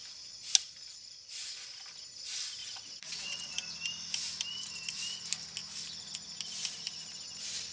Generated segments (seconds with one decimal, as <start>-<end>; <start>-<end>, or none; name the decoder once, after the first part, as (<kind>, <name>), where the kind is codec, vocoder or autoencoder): 2.6-3.5 (vocoder, WaveNeXt)